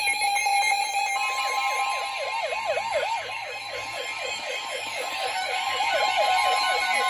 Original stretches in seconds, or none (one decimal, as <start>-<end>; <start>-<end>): 0.0-2.9; 5.9-7.1